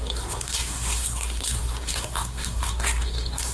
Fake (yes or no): yes